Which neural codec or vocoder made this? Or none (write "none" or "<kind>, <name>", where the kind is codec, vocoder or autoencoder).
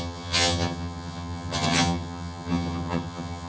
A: vocoder, HiFi-GAN